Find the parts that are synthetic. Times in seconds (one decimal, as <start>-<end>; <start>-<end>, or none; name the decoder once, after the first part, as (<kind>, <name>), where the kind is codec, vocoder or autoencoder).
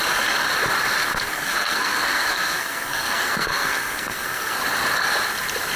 1.1-4.6 (codec, SNAC)